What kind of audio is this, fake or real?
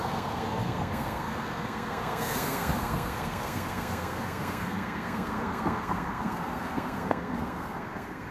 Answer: fake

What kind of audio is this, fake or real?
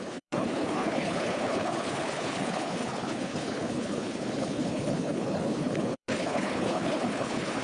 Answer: fake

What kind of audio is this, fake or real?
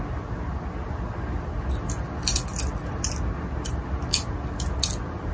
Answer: real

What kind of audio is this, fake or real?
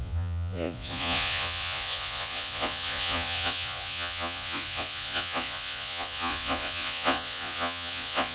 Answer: fake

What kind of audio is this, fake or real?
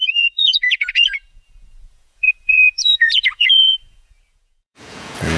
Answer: fake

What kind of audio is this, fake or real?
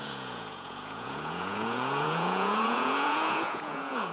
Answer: fake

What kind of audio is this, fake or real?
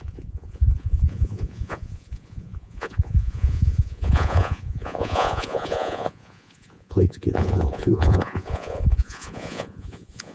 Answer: fake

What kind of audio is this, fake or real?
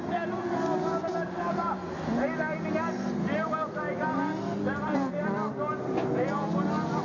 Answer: real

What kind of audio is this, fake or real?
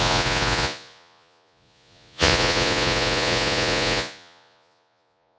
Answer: fake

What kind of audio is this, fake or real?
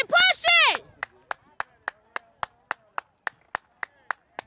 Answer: real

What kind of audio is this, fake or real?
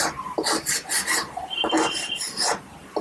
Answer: real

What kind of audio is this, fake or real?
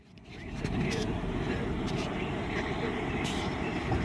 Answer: fake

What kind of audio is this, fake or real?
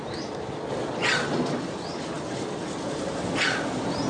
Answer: real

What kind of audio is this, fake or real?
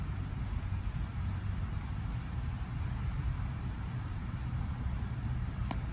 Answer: fake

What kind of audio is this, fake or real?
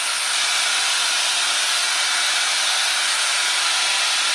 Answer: real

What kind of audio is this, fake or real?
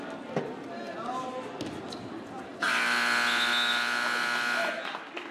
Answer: real